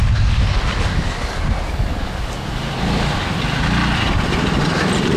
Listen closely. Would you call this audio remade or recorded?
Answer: recorded